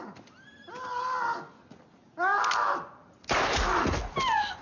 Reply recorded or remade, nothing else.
recorded